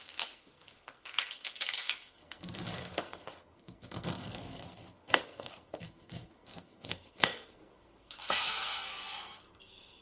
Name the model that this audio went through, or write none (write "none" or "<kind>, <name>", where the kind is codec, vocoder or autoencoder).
codec, SNAC